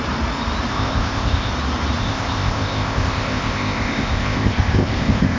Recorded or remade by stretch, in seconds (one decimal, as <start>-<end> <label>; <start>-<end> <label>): 0.0-0.7 recorded; 0.7-1.5 remade; 1.5-2.0 recorded; 2.0-5.4 remade